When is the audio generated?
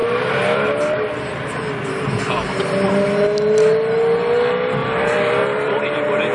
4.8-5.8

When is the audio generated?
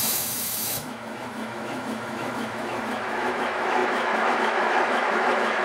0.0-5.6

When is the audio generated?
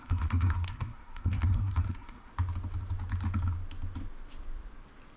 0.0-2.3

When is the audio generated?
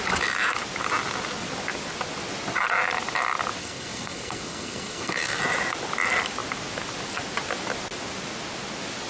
3.6-5.4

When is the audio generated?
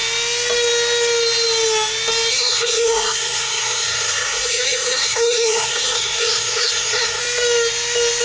2.3-7.2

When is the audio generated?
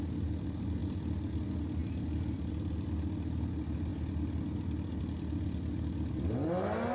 none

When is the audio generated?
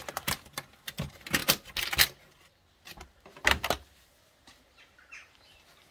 none